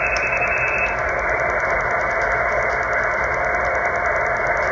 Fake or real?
real